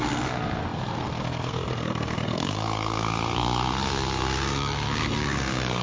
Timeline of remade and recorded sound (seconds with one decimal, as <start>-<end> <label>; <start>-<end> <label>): 0.0-5.8 remade